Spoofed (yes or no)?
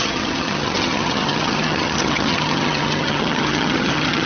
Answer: yes